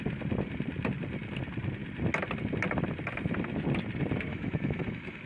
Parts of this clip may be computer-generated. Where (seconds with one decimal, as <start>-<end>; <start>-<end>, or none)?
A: 4.3-5.3